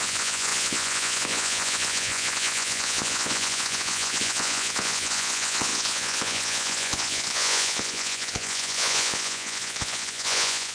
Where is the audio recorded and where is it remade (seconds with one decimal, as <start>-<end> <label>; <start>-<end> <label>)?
0.0-10.7 remade

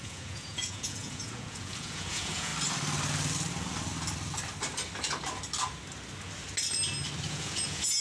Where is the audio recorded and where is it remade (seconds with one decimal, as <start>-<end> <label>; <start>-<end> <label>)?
0.0-2.5 remade; 2.5-7.3 recorded; 7.3-8.0 remade